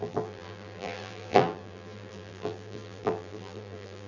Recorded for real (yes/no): no